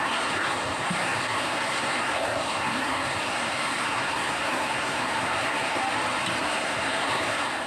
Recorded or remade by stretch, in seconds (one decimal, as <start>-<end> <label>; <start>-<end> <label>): 0.0-5.8 remade; 5.8-6.4 recorded; 6.4-7.7 remade